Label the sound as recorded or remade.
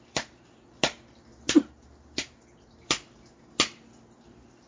recorded